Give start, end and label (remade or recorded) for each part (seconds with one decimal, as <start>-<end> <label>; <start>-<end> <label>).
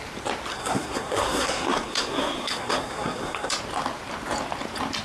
0.0-0.5 recorded; 0.5-3.5 remade; 3.5-5.0 recorded